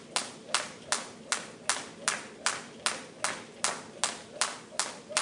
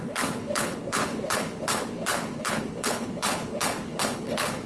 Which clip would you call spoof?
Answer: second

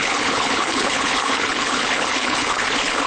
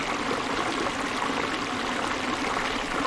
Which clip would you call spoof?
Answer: first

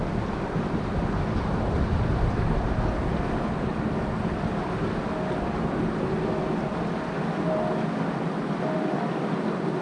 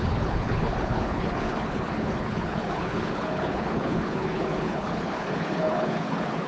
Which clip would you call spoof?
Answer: second